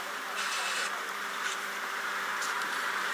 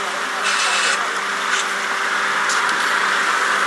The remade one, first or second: first